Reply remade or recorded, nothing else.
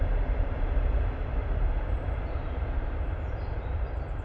remade